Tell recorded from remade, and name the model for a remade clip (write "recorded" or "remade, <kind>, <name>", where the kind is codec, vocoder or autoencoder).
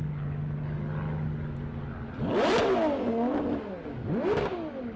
recorded